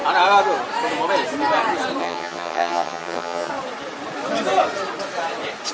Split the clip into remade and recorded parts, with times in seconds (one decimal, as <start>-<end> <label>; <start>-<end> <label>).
0.0-2.0 recorded; 2.0-3.5 remade; 3.5-5.7 recorded